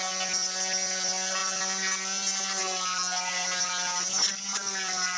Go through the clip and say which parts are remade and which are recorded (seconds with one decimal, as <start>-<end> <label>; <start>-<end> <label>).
0.0-5.2 recorded